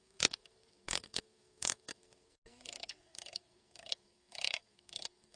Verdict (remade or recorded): remade